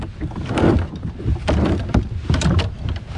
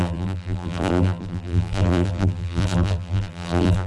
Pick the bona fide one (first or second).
first